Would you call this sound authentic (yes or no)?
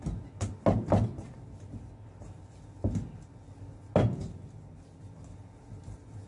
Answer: yes